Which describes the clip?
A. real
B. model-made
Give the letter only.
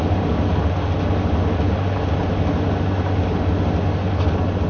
A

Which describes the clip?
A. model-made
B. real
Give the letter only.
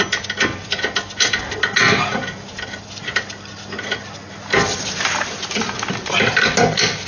B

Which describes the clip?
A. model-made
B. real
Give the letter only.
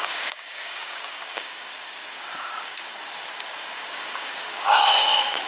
A